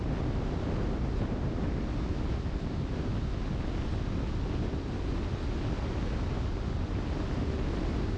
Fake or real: real